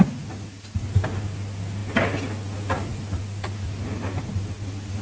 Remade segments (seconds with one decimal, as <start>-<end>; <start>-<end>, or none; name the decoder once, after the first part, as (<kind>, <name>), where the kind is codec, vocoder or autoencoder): none